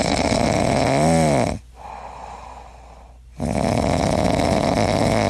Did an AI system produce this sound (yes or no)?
no